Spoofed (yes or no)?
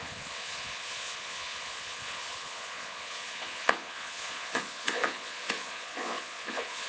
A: yes